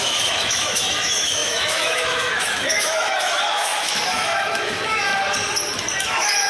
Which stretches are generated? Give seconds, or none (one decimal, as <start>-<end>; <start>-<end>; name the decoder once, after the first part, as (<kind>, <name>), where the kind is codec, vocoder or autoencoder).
0.0-5.1 (autoencoder, DAC-VAE); 6.0-6.5